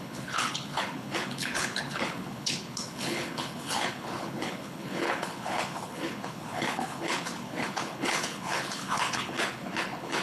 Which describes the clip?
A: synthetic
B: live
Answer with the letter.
A